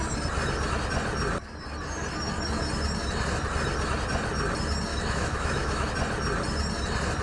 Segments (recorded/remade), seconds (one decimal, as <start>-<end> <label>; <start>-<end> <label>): 0.0-4.9 recorded; 4.9-5.9 remade; 5.9-7.2 recorded